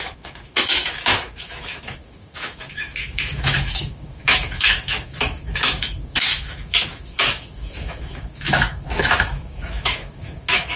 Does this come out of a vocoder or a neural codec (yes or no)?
yes